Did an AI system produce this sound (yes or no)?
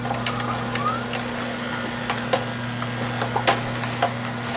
no